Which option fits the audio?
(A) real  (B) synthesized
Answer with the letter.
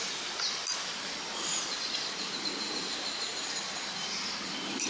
A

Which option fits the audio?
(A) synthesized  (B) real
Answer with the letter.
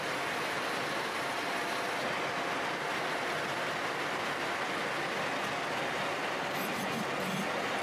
B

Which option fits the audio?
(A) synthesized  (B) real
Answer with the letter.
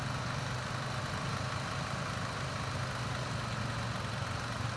B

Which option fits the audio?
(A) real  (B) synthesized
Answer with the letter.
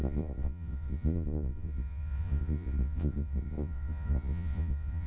B